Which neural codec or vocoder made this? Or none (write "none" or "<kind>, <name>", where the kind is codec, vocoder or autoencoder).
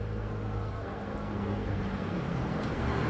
codec, SNAC